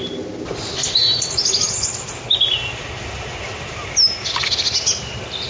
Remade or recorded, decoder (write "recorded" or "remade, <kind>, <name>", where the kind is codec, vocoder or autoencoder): recorded